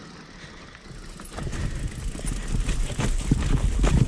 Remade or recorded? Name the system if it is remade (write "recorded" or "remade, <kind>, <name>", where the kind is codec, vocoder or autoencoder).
recorded